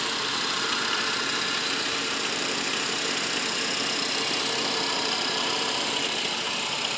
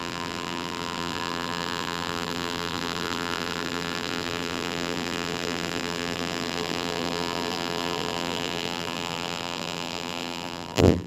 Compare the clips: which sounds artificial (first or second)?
second